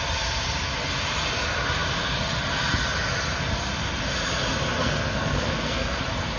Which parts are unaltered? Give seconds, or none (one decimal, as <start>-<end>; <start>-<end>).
0.0-4.8; 6.0-6.4